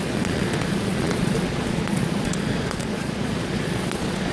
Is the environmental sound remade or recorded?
remade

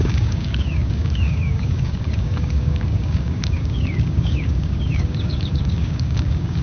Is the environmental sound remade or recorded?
remade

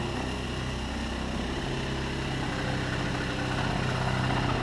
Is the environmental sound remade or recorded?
recorded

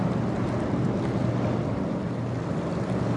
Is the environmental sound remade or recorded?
recorded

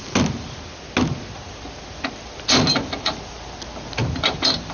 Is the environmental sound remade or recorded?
recorded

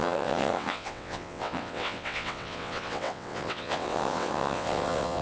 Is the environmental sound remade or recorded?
remade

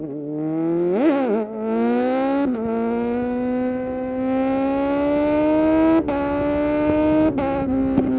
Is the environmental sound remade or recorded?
recorded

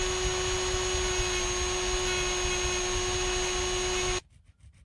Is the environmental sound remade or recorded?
recorded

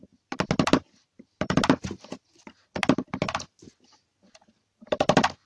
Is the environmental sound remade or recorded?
recorded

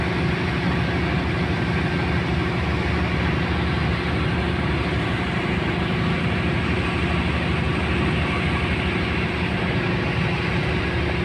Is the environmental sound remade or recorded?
recorded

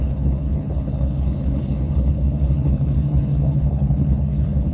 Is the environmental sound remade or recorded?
remade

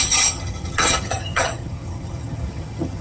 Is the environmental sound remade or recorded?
remade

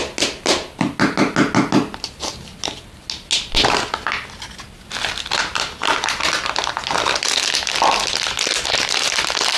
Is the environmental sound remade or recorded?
recorded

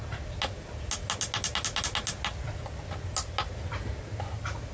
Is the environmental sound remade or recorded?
recorded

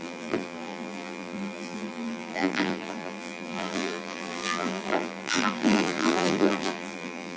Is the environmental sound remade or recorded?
remade